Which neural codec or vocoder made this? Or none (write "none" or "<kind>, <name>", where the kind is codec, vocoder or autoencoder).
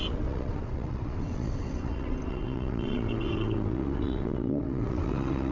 vocoder, WaveNeXt